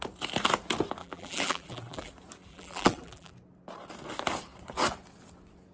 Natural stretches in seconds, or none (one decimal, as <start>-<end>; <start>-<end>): 0.0-1.0; 2.1-2.5; 3.3-5.7

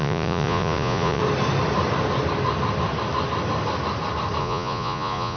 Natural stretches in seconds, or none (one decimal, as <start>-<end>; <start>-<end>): 1.2-4.4

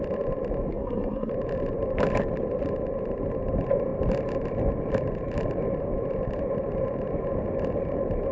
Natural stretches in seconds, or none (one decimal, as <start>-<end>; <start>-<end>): 0.0-0.7; 1.3-8.3

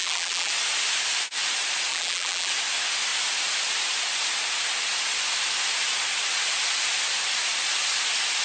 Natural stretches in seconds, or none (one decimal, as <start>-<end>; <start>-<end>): 0.5-1.9; 2.5-8.4

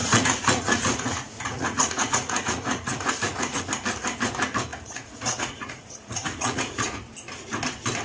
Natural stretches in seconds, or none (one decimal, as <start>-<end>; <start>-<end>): 3.6-4.7; 7.1-8.0

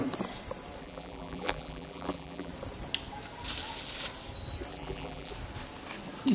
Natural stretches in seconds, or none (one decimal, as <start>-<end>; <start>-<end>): 0.0-0.8; 2.5-4.7; 5.3-6.3

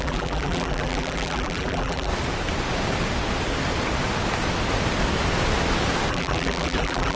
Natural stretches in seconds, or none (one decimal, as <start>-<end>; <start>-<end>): 2.1-6.1

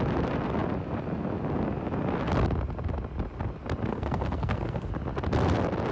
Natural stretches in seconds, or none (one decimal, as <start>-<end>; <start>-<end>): 0.0-3.9; 4.9-5.9